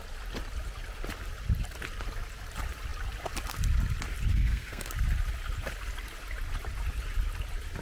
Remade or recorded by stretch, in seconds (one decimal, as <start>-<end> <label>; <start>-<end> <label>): 0.0-4.3 recorded; 4.3-4.9 remade; 4.9-7.8 recorded